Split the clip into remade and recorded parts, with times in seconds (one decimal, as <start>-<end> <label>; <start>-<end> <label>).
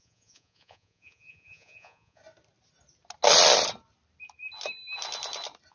0.0-2.2 remade; 2.2-5.7 recorded